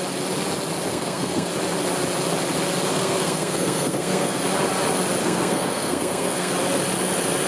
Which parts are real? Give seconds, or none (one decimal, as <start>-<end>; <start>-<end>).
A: 0.0-0.9; 1.5-2.9; 4.4-5.2; 6.5-7.5